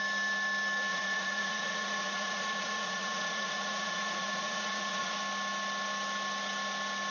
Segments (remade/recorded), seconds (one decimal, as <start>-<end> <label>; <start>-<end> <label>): 0.0-0.9 recorded; 0.9-5.2 remade; 5.2-7.1 recorded

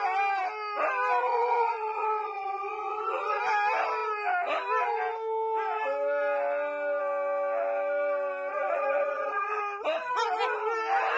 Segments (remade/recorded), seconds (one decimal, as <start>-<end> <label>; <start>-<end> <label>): 0.0-1.2 recorded; 1.2-3.4 remade; 3.4-8.5 recorded; 8.5-9.6 remade; 9.6-11.2 recorded

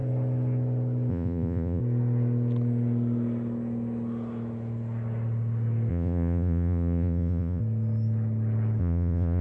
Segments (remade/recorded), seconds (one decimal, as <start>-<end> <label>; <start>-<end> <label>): 0.0-1.1 recorded; 1.1-1.8 remade; 1.8-5.9 recorded; 5.9-7.6 remade; 7.6-8.8 recorded; 8.8-9.4 remade

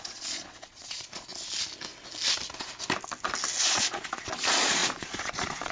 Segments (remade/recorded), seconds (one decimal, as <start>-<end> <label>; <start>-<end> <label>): 0.0-1.3 remade; 1.3-3.6 recorded; 3.6-5.7 remade

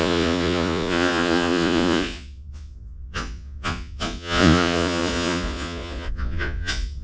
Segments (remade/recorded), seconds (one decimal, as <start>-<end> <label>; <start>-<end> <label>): 0.0-7.0 remade

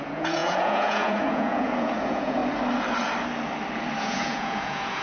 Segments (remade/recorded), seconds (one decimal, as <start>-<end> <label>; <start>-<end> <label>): 0.0-2.4 remade; 2.4-4.0 recorded; 4.0-5.0 remade

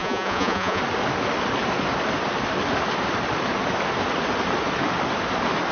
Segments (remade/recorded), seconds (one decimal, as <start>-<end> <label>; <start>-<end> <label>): 0.0-0.8 remade; 0.8-5.7 recorded